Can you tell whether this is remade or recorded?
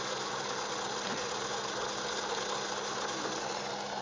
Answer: recorded